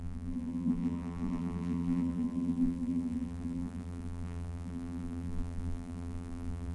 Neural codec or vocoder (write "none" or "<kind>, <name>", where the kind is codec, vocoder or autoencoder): vocoder, BigVGAN v2